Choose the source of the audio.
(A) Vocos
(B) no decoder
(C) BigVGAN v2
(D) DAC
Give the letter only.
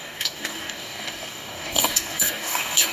D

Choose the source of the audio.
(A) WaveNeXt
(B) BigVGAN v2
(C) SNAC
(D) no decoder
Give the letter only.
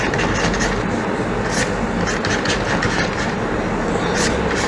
D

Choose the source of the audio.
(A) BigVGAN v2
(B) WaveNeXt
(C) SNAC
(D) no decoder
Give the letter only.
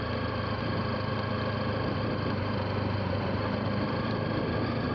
D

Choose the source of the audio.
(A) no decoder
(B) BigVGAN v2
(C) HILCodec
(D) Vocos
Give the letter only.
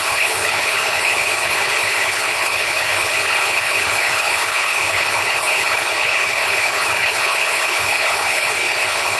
C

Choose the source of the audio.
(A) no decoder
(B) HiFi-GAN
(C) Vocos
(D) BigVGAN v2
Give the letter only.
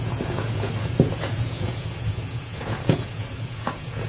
C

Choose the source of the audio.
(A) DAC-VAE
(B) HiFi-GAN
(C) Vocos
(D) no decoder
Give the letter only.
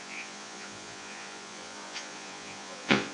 C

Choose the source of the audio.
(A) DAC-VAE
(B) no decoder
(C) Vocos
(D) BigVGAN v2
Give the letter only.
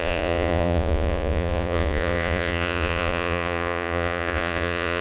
C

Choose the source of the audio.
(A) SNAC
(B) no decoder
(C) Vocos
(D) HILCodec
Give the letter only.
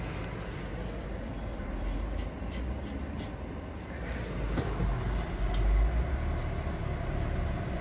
B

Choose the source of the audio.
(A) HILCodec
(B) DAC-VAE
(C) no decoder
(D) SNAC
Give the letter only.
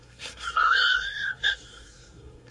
D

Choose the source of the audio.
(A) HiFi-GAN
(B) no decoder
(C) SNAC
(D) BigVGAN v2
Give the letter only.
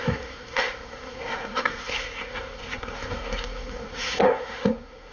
C